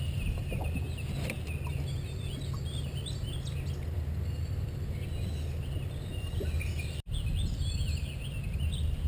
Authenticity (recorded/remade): recorded